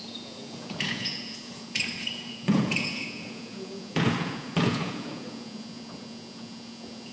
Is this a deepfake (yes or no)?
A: yes